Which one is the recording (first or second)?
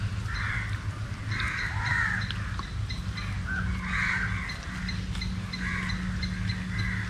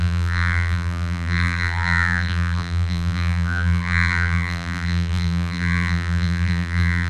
first